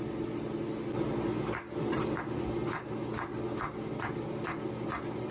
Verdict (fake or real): real